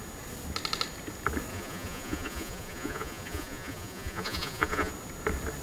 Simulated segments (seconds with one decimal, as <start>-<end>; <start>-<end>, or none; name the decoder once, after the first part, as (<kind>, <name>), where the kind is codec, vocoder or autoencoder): 1.5-4.9 (vocoder, Vocos)